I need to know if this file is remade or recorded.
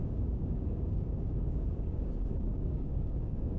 remade